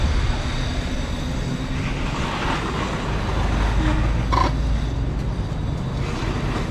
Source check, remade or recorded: recorded